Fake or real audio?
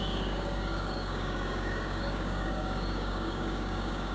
fake